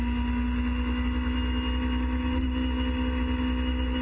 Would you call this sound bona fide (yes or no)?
yes